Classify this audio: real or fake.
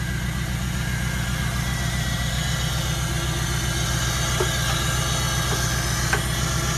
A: real